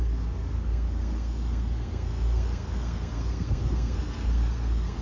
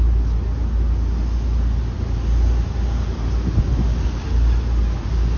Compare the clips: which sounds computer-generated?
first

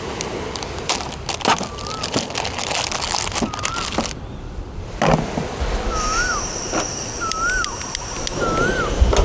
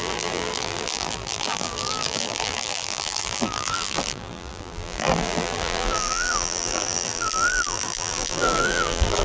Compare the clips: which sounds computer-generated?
second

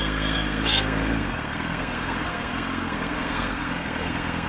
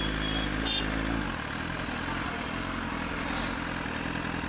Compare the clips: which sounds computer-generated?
first